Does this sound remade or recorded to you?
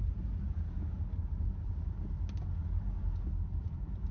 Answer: recorded